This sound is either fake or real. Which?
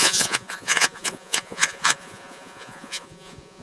fake